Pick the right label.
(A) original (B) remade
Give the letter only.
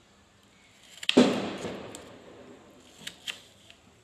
A